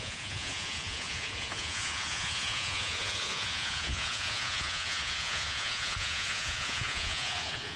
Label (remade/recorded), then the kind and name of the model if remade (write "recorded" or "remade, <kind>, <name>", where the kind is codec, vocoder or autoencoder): remade, vocoder, Vocos